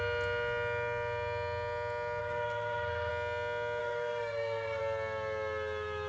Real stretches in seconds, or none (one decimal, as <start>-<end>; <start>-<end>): 0.0-2.2; 3.1-3.8; 4.8-6.1